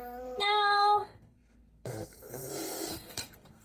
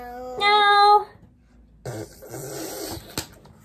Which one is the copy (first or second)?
first